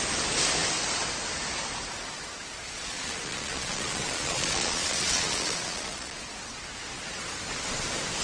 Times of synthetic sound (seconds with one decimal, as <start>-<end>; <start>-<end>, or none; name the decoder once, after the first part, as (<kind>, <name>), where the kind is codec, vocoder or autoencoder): 2.6-6.2 (vocoder, Vocos)